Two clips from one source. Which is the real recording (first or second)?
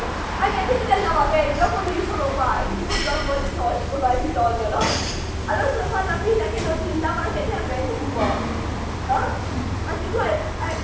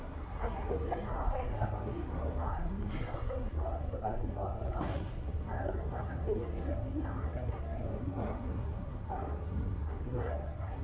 first